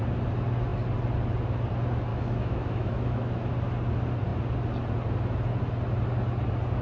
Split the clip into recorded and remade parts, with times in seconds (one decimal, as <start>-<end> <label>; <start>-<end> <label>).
0.0-2.1 recorded; 2.1-3.5 remade; 3.5-6.8 recorded